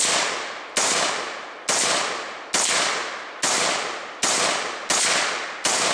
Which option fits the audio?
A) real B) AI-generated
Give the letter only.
A